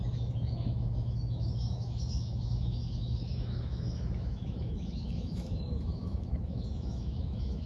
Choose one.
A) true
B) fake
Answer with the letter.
B